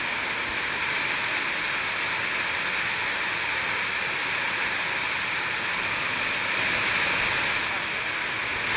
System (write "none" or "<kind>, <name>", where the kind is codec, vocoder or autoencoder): none